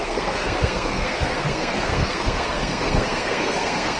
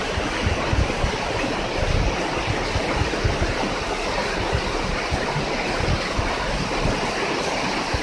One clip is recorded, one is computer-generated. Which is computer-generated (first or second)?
first